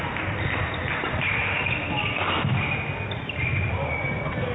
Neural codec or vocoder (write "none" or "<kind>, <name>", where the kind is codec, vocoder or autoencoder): none